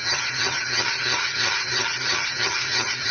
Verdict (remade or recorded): remade